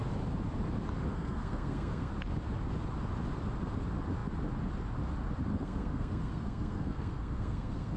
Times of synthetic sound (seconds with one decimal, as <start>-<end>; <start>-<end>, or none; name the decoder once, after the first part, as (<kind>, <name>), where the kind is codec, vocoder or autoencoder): 1.1-2.1 (codec, SNAC); 5.5-8.0